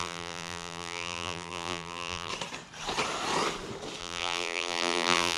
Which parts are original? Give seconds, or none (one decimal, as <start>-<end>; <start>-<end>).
2.3-4.0